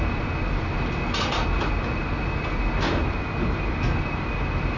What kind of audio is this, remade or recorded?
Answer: recorded